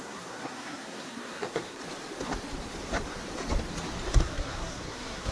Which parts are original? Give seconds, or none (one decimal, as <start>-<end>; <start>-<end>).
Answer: 1.8-4.2